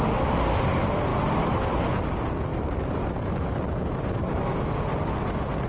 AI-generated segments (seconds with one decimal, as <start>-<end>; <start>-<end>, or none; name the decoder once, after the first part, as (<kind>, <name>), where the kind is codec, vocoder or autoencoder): 1.1-1.9 (vocoder, BigVGAN v2); 2.5-4.4